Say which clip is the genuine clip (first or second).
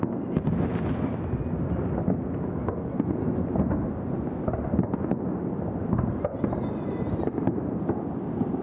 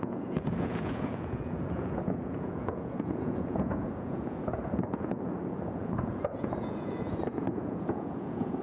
first